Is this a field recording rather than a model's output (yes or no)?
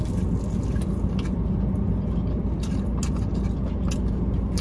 yes